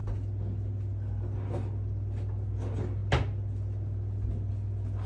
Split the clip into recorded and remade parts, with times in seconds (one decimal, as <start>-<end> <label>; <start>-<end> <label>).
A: 0.0-5.1 recorded